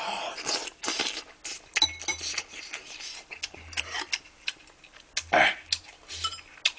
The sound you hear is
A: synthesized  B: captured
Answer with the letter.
B